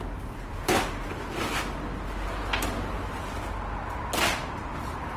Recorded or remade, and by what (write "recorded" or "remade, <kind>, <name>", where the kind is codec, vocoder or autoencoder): recorded